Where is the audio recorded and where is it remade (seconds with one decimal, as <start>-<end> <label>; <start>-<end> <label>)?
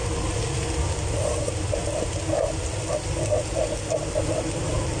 0.0-0.9 recorded; 0.9-1.8 remade; 1.8-5.0 recorded